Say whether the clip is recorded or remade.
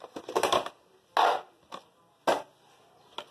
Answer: recorded